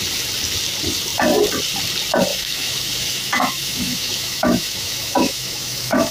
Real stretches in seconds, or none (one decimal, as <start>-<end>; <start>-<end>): 0.0-2.3